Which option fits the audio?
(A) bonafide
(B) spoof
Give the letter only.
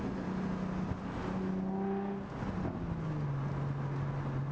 A